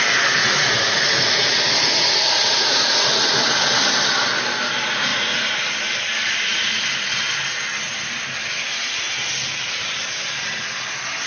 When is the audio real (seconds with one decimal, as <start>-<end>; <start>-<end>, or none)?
0.0-0.4; 3.8-5.1; 5.7-11.3